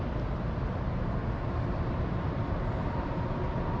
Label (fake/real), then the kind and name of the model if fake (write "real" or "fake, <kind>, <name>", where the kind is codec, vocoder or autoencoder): real